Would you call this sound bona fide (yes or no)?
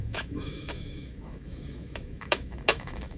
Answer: no